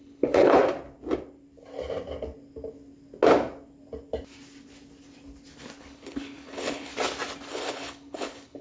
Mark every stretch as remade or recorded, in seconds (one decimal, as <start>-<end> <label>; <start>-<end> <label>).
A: 0.0-0.6 remade; 0.6-5.8 recorded; 5.8-6.9 remade; 6.9-7.5 recorded; 7.5-8.6 remade